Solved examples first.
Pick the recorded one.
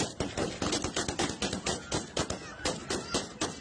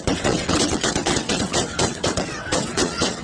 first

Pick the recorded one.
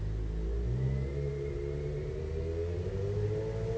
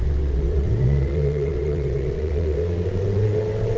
first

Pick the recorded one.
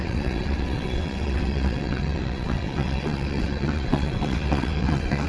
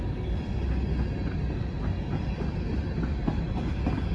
second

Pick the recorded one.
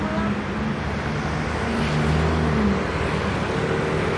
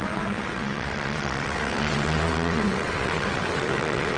first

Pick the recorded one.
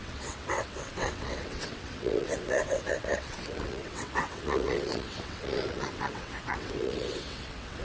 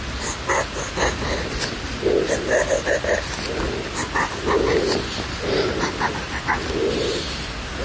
second